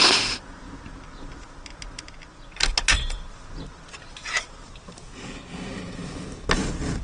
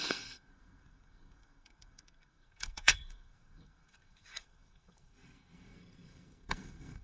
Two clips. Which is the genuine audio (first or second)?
first